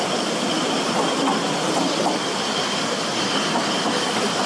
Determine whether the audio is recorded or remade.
recorded